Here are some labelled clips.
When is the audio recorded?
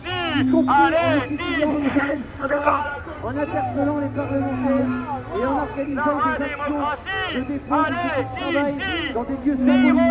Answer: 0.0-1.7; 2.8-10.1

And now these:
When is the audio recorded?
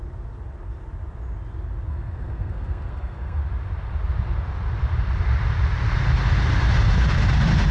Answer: 0.0-1.9; 3.4-7.7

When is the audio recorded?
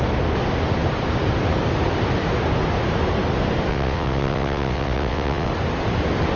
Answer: 0.0-3.7; 5.5-6.4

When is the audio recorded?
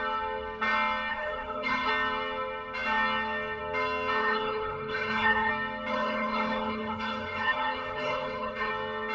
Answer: 0.0-1.1; 1.9-4.2; 5.5-5.9; 8.7-9.1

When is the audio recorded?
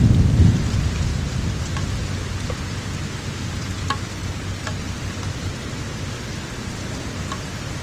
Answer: 0.0-1.1; 1.6-4.2; 4.8-7.8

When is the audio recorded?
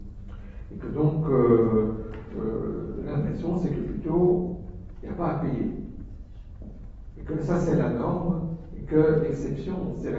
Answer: 0.0-3.1; 3.7-7.7; 8.3-10.2